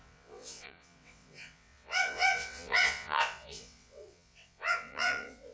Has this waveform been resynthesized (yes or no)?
yes